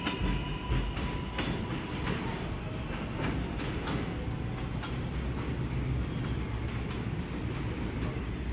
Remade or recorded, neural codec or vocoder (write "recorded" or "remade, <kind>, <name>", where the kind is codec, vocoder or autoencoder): recorded